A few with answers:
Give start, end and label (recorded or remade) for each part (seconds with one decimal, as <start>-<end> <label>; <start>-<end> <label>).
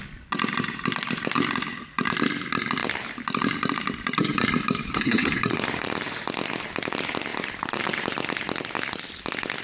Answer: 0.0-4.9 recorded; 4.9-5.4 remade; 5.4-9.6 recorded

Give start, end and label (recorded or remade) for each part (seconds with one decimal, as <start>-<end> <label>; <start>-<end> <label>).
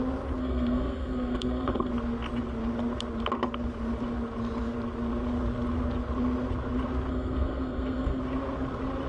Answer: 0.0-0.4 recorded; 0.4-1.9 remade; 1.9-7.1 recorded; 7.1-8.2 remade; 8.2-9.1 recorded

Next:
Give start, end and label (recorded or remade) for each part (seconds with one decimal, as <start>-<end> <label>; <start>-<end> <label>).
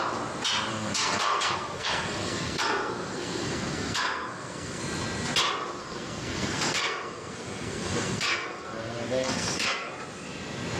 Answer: 0.0-0.7 recorded; 0.7-4.8 remade; 4.8-5.8 recorded; 5.8-9.9 remade; 9.9-10.8 recorded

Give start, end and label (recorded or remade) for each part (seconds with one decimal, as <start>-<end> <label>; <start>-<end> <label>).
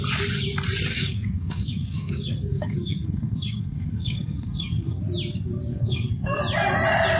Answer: 0.0-0.9 recorded; 0.9-5.0 remade; 5.0-5.7 recorded; 5.7-6.4 remade; 6.4-7.2 recorded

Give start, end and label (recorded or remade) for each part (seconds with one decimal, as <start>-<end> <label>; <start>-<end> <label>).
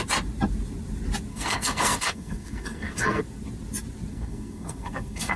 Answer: 0.0-1.3 recorded; 1.3-3.2 remade; 3.2-4.1 recorded; 4.1-5.4 remade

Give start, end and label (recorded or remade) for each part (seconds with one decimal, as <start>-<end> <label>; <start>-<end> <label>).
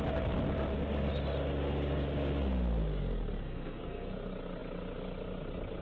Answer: 0.0-3.4 recorded; 3.4-4.1 remade; 4.1-5.8 recorded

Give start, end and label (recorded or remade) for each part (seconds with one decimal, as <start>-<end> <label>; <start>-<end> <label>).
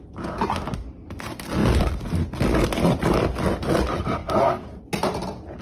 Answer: 0.0-5.6 recorded